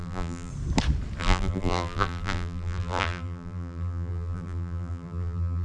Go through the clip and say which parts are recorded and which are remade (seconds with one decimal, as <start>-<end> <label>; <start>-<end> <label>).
0.0-0.5 remade; 0.5-1.2 recorded; 1.2-5.6 remade